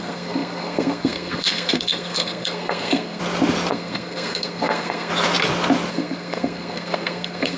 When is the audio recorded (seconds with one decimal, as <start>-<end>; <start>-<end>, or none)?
3.2-3.7; 5.1-5.9